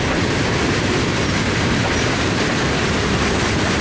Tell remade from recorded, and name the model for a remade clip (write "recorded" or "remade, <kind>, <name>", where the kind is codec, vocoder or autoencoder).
remade, vocoder, BigVGAN v2